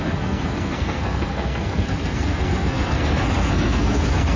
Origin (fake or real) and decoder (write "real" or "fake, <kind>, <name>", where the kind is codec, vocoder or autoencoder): fake, codec, SNAC